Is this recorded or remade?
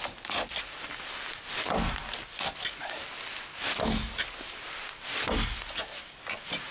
recorded